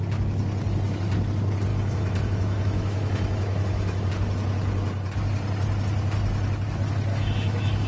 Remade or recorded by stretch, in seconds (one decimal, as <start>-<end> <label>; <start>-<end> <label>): 0.0-1.7 recorded; 1.7-4.1 remade; 4.1-7.1 recorded; 7.1-7.9 remade